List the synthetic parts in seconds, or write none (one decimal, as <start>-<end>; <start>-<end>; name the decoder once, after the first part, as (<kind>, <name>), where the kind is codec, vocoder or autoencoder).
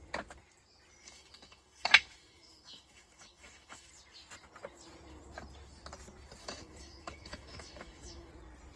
1.0-3.9 (autoencoder, DAC-VAE); 6.4-8.3